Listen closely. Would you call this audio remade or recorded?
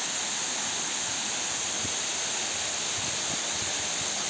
recorded